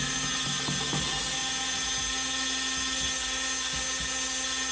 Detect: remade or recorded recorded